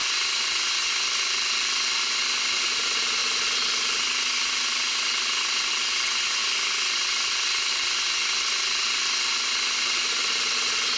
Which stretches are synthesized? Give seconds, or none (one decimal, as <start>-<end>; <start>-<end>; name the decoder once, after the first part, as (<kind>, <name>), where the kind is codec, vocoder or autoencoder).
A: none